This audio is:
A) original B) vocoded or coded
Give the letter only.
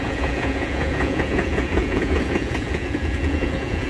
B